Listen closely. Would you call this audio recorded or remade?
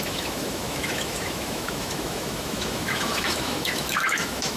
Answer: remade